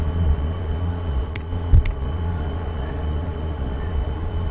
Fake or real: fake